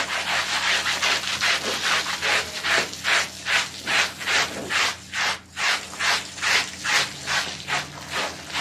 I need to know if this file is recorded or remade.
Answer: recorded